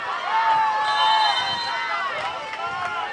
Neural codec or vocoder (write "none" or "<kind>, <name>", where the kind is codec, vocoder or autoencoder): none